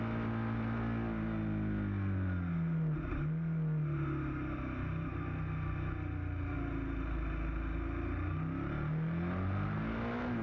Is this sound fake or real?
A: real